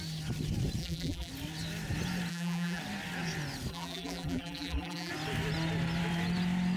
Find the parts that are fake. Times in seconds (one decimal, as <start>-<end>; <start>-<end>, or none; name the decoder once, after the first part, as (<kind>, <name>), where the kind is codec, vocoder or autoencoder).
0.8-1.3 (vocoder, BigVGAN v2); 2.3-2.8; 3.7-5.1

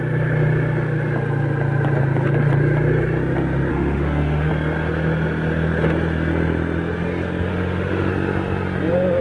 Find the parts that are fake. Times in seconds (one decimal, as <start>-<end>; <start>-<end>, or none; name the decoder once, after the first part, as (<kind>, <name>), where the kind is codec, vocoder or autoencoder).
3.7-4.5 (autoencoder, DAC-VAE); 7.5-8.1

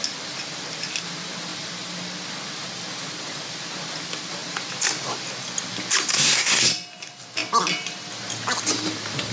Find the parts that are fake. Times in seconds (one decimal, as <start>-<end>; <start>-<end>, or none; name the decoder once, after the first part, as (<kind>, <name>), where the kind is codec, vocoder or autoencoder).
6.1-6.7 (codec, SNAC)

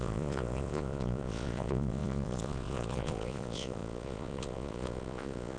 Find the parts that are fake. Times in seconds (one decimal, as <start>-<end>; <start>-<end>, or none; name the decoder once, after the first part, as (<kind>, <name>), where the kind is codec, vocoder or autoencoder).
0.0-5.6 (vocoder, Vocos)

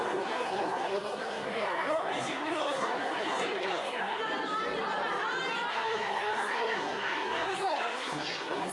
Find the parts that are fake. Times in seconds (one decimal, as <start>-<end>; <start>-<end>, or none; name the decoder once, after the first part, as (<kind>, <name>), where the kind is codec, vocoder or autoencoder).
0.0-4.2 (codec, SNAC); 5.7-8.7